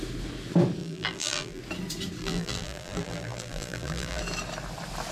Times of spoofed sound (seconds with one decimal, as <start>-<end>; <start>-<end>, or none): 0.8-1.6; 2.2-4.2